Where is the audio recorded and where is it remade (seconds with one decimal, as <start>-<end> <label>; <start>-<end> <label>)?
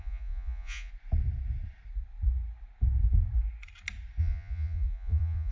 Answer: 0.0-0.9 remade; 0.9-4.2 recorded; 4.2-5.5 remade